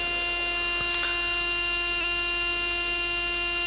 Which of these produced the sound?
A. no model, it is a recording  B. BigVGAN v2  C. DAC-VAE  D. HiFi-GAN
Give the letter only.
A